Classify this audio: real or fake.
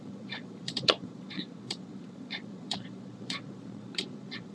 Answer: fake